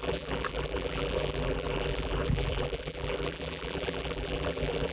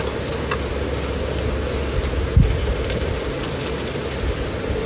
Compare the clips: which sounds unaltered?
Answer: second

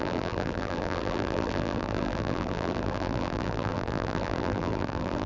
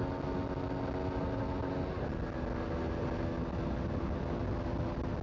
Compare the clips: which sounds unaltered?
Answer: second